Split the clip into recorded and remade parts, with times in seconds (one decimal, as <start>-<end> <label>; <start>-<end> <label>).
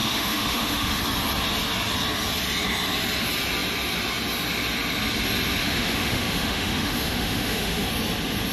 0.0-1.0 remade; 1.0-5.6 recorded; 5.6-7.9 remade; 7.9-8.5 recorded